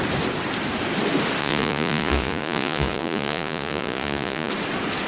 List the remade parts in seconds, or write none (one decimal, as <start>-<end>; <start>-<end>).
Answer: 1.4-4.5